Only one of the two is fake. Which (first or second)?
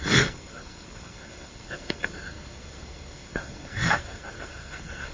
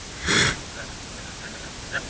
first